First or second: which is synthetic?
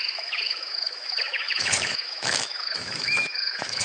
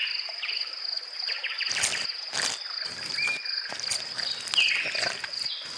first